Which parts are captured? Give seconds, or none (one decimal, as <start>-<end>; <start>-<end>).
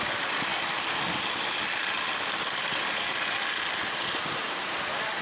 0.0-5.2